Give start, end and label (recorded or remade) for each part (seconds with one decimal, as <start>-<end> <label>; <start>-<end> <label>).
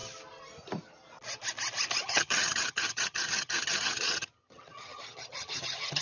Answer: 0.0-2.0 recorded; 2.0-6.0 remade